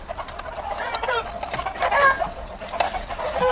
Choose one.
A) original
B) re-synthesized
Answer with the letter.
A